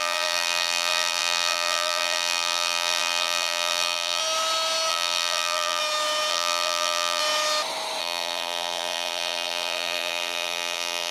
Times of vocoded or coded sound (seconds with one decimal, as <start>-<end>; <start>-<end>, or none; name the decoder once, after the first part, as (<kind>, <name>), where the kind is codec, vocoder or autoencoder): 0.0-4.2 (vocoder, BigVGAN v2); 4.9-5.8; 6.3-7.2; 8.0-11.1

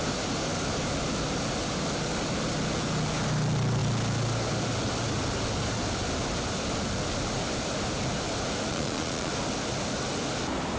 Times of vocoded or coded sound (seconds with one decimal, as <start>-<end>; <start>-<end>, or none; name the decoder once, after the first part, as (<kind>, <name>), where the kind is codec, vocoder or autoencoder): 8.7-9.3 (vocoder, Vocos)

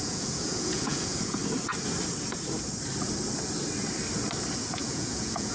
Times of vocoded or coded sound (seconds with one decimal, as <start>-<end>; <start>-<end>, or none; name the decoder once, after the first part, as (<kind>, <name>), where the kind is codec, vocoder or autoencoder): 0.0-1.4 (vocoder, Vocos); 4.7-5.5

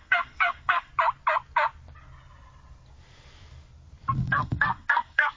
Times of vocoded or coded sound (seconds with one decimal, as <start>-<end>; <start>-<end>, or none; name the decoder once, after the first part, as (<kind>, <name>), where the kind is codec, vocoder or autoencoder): 0.0-0.9 (codec, SNAC); 4.1-5.4

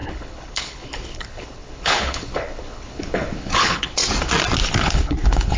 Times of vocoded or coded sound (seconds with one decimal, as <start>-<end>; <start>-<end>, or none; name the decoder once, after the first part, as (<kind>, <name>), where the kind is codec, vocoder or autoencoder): 0.0-4.0 (codec, HILCodec); 4.8-5.6

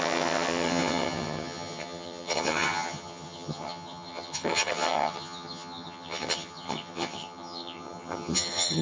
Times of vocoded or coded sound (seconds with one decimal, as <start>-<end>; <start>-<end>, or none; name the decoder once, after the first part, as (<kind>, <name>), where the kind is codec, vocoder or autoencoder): 0.0-8.8 (vocoder, HiFi-GAN)

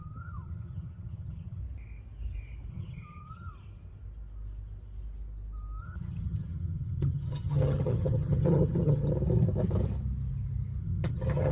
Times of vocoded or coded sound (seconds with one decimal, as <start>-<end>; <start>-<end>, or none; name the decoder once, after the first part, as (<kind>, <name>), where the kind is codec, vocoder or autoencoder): 0.0-1.6 (vocoder, HiFi-GAN); 2.7-3.5; 5.8-9.1; 10.8-11.5

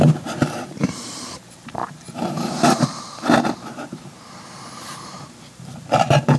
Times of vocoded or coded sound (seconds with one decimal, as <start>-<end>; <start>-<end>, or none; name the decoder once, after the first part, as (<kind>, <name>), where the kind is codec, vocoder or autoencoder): 0.0-6.4 (vocoder, BigVGAN v2)